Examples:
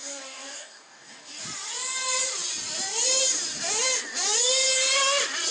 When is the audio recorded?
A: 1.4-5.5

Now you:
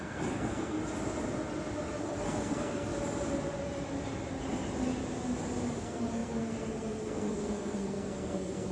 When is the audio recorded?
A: 0.8-2.0; 2.9-5.8

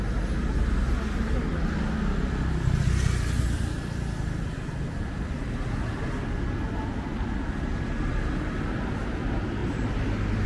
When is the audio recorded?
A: 0.0-1.5; 5.5-10.5

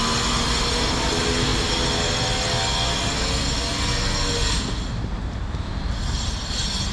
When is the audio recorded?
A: 0.0-6.9

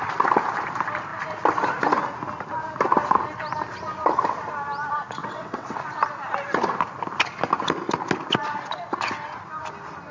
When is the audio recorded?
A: 0.0-5.2; 5.8-10.1

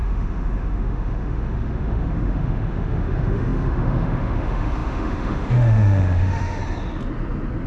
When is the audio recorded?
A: 6.6-7.7

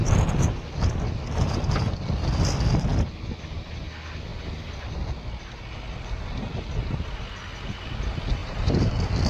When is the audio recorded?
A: 0.0-8.4; 8.9-9.3

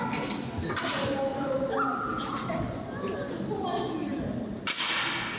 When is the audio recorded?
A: 0.0-5.4